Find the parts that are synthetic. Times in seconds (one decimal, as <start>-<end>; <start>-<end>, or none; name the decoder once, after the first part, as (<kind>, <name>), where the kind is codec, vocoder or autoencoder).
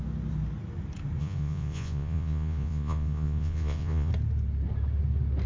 1.2-4.1 (vocoder, Vocos)